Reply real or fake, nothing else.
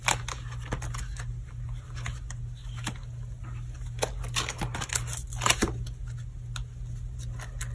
real